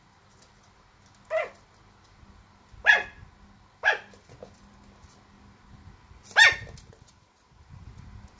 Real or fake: real